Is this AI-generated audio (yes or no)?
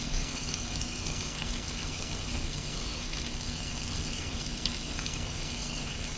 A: yes